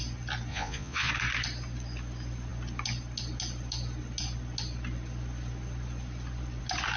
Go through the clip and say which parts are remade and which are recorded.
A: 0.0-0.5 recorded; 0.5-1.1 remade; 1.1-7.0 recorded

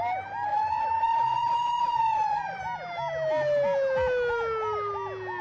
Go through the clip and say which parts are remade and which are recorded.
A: 0.0-0.5 recorded; 0.5-2.6 remade; 2.6-5.4 recorded

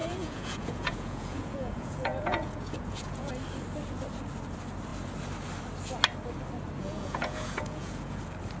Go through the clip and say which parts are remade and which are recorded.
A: 0.0-3.3 remade; 3.3-6.8 recorded; 6.8-8.2 remade; 8.2-8.6 recorded

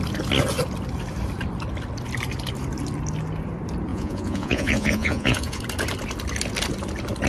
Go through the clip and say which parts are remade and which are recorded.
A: 0.0-3.9 recorded; 3.9-5.6 remade; 5.6-7.3 recorded